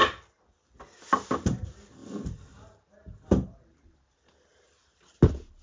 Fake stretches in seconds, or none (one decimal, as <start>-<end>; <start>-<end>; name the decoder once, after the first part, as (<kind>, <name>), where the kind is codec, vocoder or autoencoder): none